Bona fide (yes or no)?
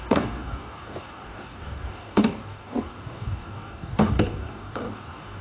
no